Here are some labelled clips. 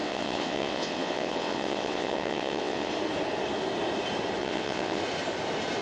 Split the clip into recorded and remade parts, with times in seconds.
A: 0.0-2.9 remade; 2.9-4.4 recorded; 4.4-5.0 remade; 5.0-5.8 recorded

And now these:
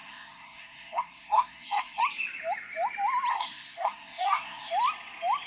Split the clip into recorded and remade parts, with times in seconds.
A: 0.0-2.0 remade; 2.0-3.3 recorded; 3.3-4.7 remade; 4.7-5.5 recorded

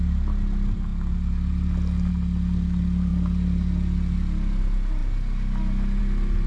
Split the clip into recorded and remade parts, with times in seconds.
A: 0.0-6.5 recorded

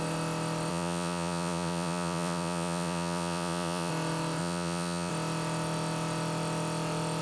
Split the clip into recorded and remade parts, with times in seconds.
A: 0.0-0.7 recorded; 0.7-3.9 remade; 3.9-4.4 recorded; 4.4-5.1 remade; 5.1-7.2 recorded

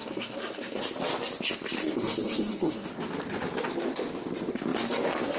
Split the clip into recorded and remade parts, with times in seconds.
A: 0.0-0.8 remade; 0.8-1.8 recorded; 1.8-2.9 remade; 2.9-5.4 recorded

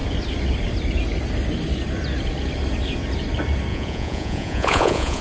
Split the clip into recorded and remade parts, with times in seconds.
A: 0.0-3.7 recorded; 3.7-5.2 remade

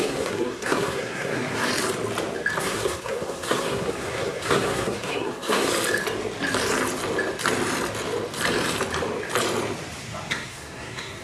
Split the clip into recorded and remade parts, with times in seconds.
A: 0.0-1.7 remade; 1.7-2.6 recorded; 2.6-5.7 remade; 5.7-10.3 recorded; 10.3-11.2 remade

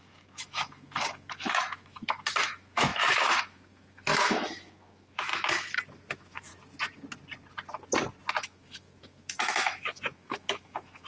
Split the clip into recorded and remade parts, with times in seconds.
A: 0.0-5.3 remade; 5.3-6.1 recorded; 6.1-6.5 remade; 6.5-8.4 recorded; 8.4-11.1 remade